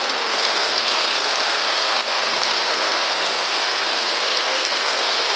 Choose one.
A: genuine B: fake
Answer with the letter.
B